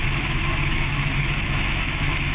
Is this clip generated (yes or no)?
yes